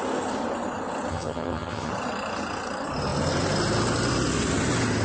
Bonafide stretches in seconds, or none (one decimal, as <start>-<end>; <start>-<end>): 0.0-1.1; 1.9-5.0

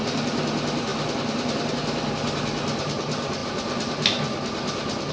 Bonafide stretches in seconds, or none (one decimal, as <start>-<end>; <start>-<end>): 0.0-5.1